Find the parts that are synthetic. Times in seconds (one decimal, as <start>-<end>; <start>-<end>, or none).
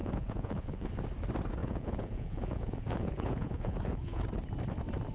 0.0-0.9; 1.6-4.2